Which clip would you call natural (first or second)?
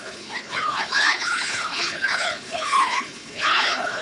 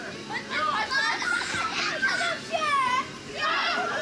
second